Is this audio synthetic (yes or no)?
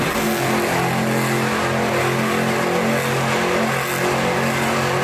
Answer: no